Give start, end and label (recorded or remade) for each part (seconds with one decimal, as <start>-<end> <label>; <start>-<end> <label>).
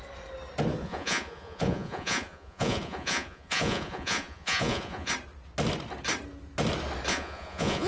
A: 0.0-0.8 recorded; 0.8-5.1 remade; 5.1-7.1 recorded; 7.1-7.9 remade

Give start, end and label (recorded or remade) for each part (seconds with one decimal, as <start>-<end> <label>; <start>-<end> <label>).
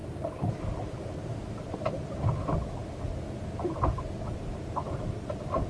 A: 0.0-2.3 remade; 2.3-5.7 recorded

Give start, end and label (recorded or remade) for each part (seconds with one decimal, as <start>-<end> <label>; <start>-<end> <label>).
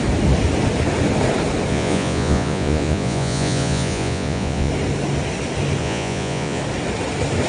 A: 0.0-1.7 recorded; 1.7-4.7 remade; 4.7-5.8 recorded; 5.8-6.6 remade; 6.6-7.5 recorded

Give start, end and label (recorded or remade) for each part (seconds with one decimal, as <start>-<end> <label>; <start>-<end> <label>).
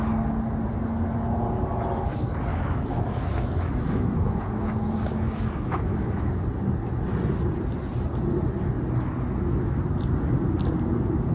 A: 0.0-2.5 recorded; 2.5-6.3 remade; 6.3-11.3 recorded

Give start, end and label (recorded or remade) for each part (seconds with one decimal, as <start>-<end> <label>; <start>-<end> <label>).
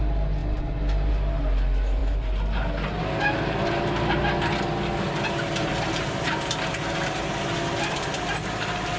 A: 0.0-9.0 recorded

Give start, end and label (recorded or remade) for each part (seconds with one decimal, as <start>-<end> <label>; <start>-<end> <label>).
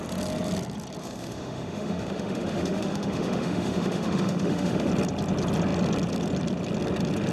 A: 0.0-1.0 recorded; 1.0-4.9 remade; 4.9-7.3 recorded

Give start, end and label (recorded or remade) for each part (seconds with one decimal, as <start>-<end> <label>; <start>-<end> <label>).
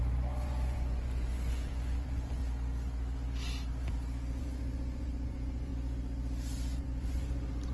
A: 0.0-2.4 remade; 2.4-4.4 recorded; 4.4-5.7 remade; 5.7-6.8 recorded; 6.8-7.7 remade